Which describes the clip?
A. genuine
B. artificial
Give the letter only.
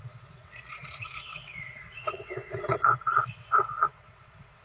B